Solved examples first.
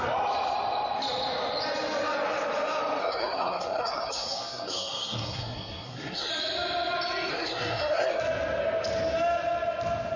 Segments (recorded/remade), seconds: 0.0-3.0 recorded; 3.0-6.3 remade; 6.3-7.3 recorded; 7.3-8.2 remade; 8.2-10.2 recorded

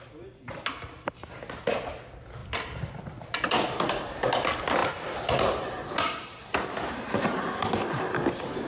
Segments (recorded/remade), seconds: 0.0-8.7 recorded